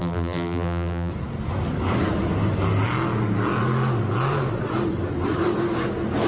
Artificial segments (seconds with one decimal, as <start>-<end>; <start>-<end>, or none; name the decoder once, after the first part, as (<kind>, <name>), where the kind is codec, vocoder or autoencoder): 0.0-1.1 (vocoder, BigVGAN v2)